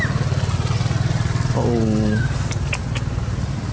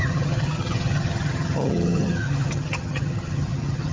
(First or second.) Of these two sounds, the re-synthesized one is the second